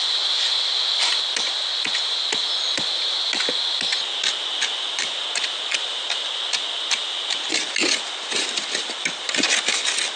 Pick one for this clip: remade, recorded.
recorded